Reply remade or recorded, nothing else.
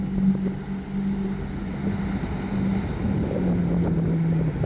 recorded